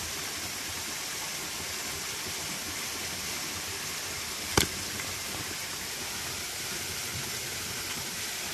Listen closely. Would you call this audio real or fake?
real